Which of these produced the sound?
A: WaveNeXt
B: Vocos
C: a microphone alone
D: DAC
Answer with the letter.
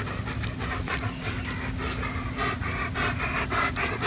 C